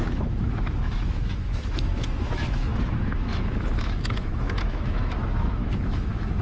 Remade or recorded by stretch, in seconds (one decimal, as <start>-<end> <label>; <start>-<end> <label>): 0.0-6.4 remade